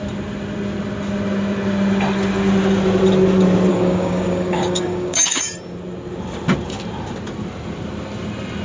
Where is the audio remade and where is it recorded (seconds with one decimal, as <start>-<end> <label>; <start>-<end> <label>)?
0.0-3.7 recorded; 3.7-5.4 remade; 5.4-8.6 recorded